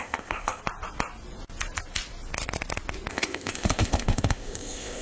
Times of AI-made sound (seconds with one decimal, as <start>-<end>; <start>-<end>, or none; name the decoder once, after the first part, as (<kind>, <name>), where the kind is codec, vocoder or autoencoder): 0.0-0.6 (codec, ZipCodec); 3.1-5.0